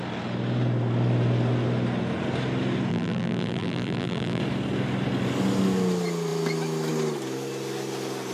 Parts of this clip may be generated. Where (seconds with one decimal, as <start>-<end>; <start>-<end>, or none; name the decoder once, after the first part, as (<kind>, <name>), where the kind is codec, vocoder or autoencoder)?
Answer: 2.9-4.4 (vocoder, BigVGAN v2)